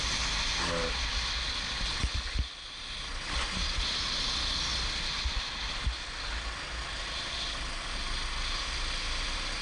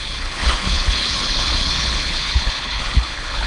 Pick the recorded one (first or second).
first